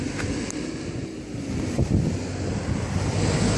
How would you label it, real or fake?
fake